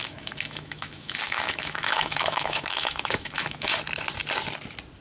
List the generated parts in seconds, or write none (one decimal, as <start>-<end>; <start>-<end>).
0.0-3.7